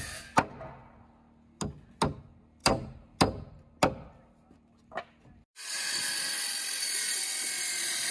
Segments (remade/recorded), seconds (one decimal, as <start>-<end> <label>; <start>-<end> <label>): 0.0-2.6 recorded; 2.6-3.2 remade; 3.2-5.5 recorded; 5.5-6.1 remade; 6.1-8.1 recorded